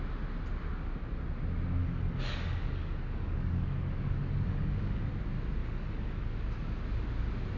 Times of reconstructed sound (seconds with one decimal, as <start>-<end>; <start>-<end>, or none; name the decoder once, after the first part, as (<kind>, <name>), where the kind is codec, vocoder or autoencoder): 1.8-5.1 (codec, DAC); 5.6-6.4